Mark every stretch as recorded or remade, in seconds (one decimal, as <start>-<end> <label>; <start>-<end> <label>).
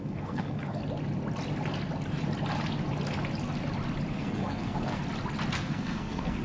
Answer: 0.0-0.8 remade; 0.8-4.1 recorded; 4.1-5.0 remade; 5.0-5.5 recorded; 5.5-6.4 remade